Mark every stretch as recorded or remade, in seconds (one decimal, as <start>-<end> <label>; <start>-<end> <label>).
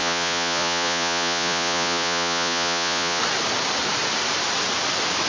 0.0-3.2 remade; 3.2-5.3 recorded